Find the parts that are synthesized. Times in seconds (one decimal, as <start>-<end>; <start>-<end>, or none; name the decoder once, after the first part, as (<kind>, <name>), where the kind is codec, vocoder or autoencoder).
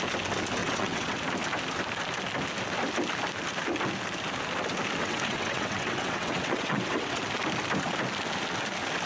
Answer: 0.6-1.2 (vocoder, WaveNeXt); 5.0-7.2